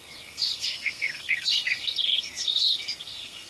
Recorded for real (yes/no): no